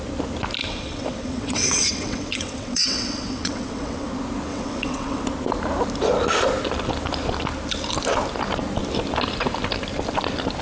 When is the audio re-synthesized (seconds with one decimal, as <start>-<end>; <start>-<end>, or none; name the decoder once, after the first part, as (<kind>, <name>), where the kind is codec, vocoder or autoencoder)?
0.6-4.1 (vocoder, WaveNeXt); 4.5-5.2